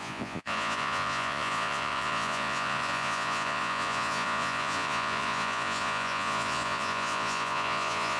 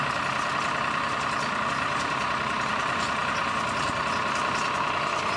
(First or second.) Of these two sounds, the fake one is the first